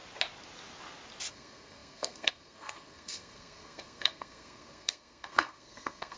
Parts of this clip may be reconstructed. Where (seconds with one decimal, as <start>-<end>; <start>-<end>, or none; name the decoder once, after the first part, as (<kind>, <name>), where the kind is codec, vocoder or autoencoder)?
1.3-6.2 (codec, SNAC)